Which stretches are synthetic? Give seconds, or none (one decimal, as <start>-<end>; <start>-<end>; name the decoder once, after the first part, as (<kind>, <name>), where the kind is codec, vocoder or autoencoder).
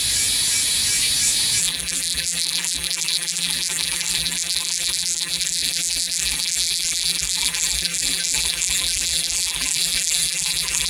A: 1.6-10.9 (vocoder, BigVGAN v2)